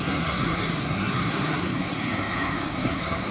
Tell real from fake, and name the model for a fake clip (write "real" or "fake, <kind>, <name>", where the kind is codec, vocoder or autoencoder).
fake, codec, SNAC